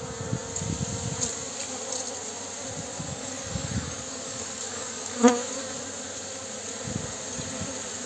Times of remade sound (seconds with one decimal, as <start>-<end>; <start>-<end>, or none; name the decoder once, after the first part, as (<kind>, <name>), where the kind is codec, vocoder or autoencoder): 2.9-5.5 (codec, DAC)